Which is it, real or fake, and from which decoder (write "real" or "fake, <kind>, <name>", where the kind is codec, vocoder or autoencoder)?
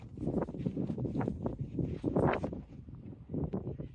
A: real